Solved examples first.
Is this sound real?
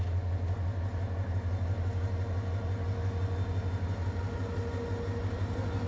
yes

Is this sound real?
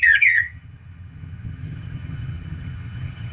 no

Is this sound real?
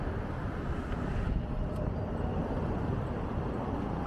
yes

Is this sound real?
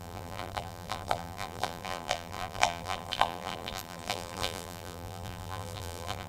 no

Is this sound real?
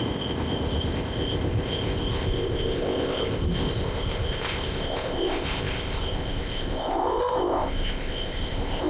no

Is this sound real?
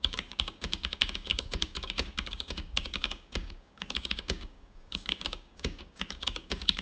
no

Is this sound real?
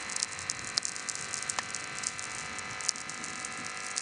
yes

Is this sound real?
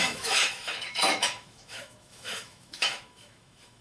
no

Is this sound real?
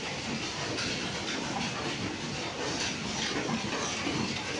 yes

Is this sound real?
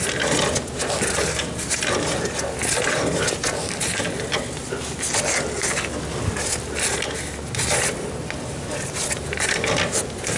yes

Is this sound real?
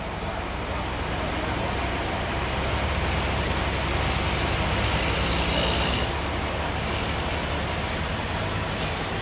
yes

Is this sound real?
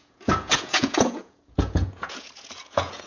no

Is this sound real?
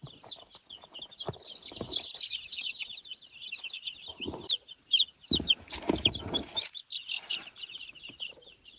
yes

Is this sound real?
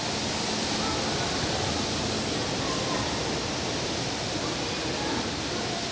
yes